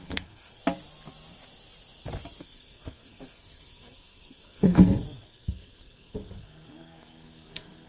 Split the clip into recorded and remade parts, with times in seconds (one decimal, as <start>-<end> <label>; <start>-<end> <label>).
0.0-0.6 remade; 0.6-2.4 recorded; 2.4-7.9 remade